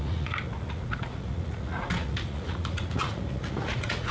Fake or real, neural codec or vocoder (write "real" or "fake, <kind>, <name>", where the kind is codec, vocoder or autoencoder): fake, vocoder, Vocos